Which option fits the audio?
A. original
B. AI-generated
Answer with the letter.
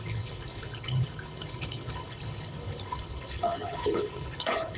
B